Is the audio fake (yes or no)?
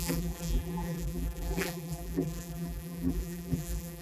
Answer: yes